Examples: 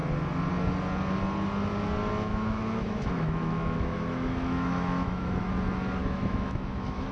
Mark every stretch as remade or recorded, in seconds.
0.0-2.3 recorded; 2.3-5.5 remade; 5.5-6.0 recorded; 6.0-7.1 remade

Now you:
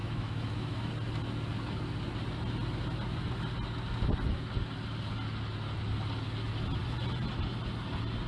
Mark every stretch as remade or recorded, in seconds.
0.0-0.9 remade; 0.9-8.3 recorded

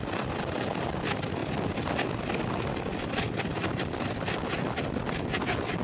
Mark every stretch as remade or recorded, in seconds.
0.0-5.8 recorded

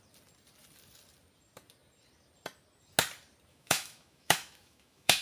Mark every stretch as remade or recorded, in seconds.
0.0-3.5 recorded; 3.5-5.2 remade

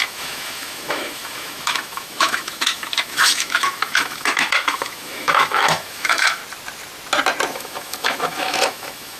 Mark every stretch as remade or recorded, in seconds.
0.0-6.4 remade; 6.4-7.5 recorded; 7.5-9.2 remade

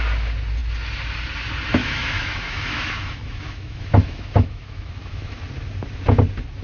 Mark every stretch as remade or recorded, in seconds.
0.0-1.8 recorded; 1.8-5.4 remade; 5.4-6.6 recorded

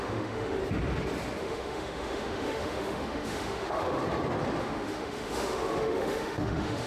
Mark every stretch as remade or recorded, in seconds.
0.0-0.6 remade; 0.6-1.4 recorded; 1.4-4.0 remade; 4.0-4.6 recorded; 4.6-6.9 remade